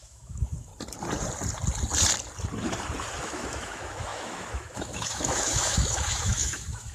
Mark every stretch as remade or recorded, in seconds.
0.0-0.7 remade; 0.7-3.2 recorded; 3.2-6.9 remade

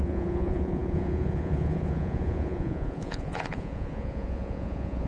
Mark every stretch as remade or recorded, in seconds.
0.0-5.1 remade